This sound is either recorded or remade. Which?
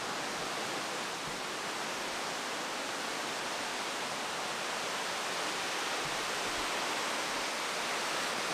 recorded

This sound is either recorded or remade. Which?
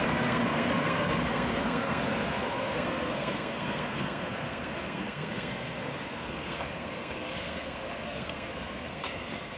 remade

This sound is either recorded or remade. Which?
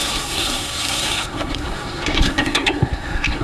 remade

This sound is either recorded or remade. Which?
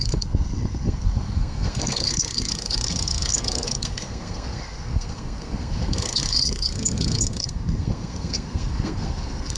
remade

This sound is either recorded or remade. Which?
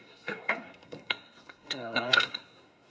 remade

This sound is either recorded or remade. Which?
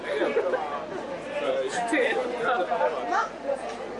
recorded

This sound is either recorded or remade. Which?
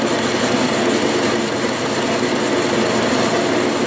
recorded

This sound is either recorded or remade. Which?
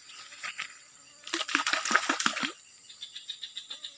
recorded